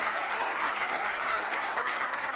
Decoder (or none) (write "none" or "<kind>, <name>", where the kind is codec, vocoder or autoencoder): codec, SNAC